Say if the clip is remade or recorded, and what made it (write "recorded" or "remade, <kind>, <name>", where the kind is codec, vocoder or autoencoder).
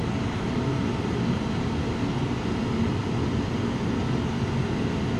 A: recorded